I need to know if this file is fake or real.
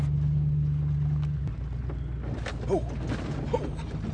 real